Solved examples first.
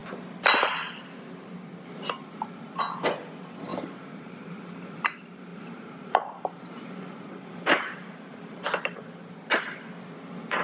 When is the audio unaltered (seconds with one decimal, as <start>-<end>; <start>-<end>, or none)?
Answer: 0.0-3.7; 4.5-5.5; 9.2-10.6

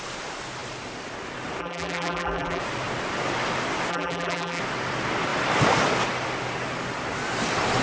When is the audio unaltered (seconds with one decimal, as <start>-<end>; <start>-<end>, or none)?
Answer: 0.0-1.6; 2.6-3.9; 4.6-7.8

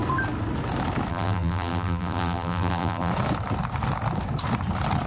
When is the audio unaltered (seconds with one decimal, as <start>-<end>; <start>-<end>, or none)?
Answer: 0.0-1.1; 3.1-5.1

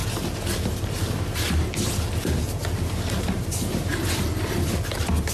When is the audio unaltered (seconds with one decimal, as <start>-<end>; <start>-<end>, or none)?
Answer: 0.0-3.2; 3.9-5.3

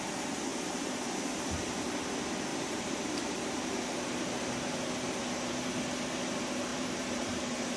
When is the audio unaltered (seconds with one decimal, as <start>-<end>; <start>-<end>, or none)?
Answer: 0.0-0.5; 1.9-2.5; 5.5-6.7

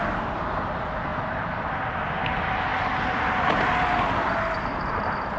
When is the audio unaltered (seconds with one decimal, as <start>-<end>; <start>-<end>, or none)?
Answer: 0.0-1.1; 1.9-5.4